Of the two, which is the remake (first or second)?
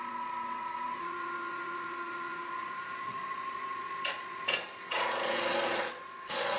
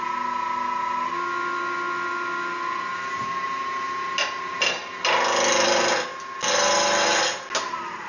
first